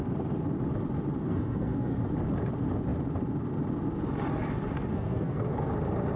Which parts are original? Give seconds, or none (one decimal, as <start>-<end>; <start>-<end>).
0.0-1.2; 2.0-4.9; 5.7-6.2

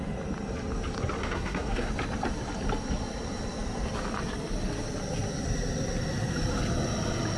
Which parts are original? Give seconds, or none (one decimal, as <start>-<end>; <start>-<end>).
0.0-1.2; 1.9-7.4

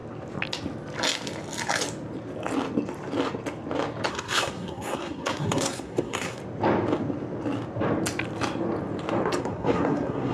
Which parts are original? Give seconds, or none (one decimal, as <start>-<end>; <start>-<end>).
0.0-4.1; 6.4-9.4

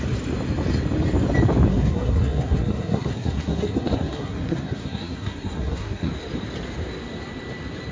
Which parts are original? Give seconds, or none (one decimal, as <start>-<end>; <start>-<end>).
0.0-1.7; 6.1-7.9

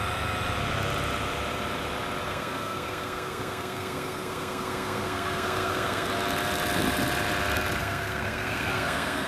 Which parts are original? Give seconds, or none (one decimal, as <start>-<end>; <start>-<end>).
0.0-2.3; 6.1-7.8

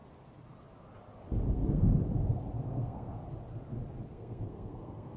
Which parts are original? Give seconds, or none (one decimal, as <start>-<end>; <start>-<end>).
0.0-1.5; 1.9-2.7; 3.1-4.1